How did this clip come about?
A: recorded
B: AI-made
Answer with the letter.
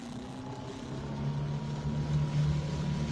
A